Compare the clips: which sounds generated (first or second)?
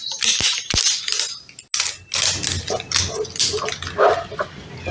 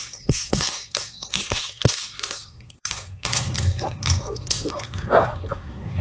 second